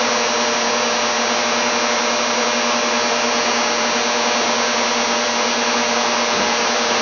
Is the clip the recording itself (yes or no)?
yes